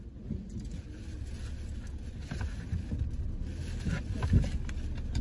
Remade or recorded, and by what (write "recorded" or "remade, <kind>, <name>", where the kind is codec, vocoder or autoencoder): recorded